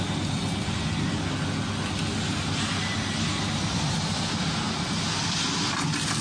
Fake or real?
real